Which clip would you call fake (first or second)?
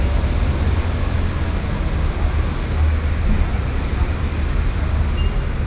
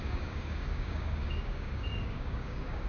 second